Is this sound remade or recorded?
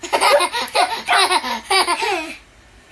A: recorded